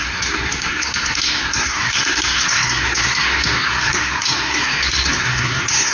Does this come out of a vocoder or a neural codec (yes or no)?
yes